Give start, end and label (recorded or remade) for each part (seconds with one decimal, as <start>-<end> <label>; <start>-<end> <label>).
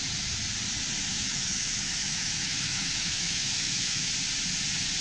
0.0-1.1 recorded; 1.1-4.1 remade; 4.1-5.0 recorded